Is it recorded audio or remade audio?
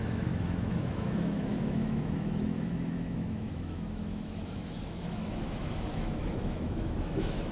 remade